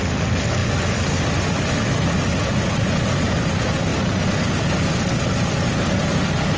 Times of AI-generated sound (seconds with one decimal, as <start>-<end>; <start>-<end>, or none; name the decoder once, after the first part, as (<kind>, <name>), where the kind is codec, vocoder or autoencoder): none